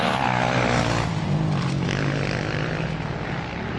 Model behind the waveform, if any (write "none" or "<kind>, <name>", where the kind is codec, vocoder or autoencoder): none